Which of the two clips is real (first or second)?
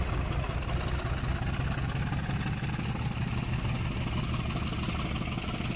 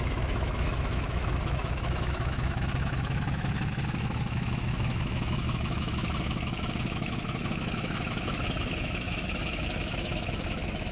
first